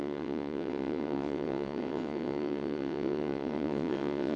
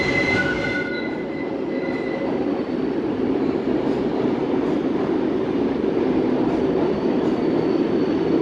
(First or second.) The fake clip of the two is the first